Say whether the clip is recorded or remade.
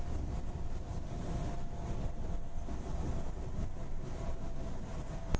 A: recorded